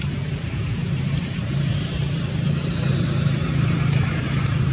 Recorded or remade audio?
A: remade